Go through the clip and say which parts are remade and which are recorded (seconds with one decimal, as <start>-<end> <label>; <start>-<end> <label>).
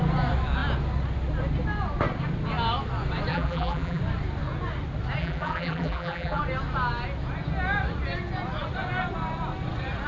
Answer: 0.0-3.3 recorded; 3.3-4.0 remade; 4.0-5.2 recorded; 5.2-6.4 remade; 6.4-10.1 recorded